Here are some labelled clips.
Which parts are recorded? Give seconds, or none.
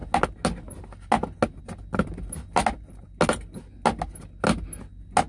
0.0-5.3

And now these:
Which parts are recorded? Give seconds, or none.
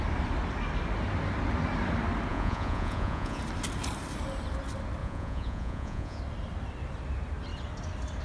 0.0-2.3; 3.4-5.0; 6.2-8.2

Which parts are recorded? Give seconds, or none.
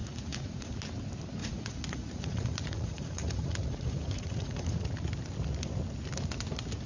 0.8-1.4; 4.8-6.9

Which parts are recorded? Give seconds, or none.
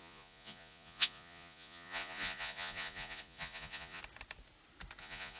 4.0-5.0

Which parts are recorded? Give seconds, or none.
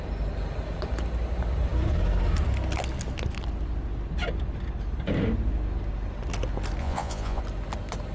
0.0-6.8; 7.4-8.1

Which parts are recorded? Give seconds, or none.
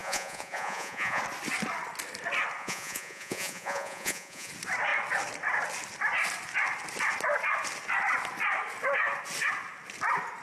1.2-2.6; 4.5-10.4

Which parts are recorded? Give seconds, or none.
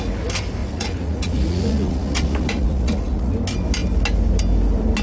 0.0-0.6; 3.3-5.0